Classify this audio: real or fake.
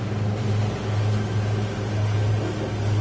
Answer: real